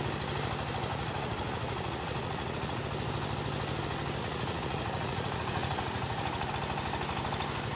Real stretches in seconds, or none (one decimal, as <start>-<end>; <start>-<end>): 0.0-0.9; 2.8-4.2; 6.5-7.8